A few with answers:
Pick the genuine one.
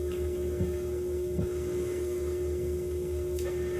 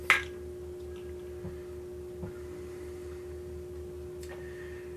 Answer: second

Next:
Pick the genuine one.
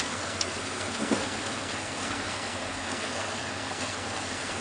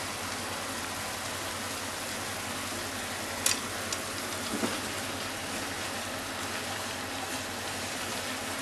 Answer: second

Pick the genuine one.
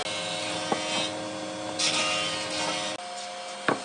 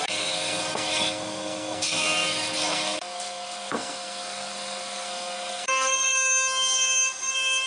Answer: first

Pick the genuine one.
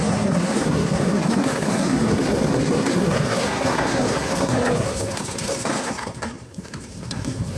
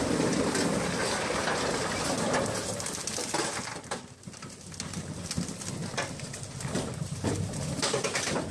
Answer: second